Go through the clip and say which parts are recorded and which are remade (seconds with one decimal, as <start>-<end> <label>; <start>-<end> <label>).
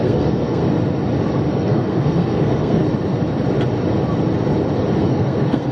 0.0-0.6 remade; 0.6-1.5 recorded; 1.5-2.8 remade; 2.8-5.0 recorded; 5.0-5.7 remade